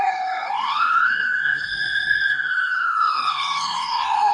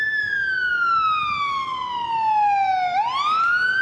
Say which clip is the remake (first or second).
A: first